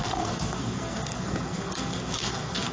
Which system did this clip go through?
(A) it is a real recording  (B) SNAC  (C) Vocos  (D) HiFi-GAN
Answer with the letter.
B